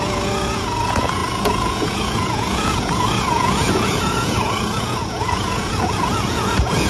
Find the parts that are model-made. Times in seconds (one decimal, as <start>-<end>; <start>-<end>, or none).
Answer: 0.0-6.9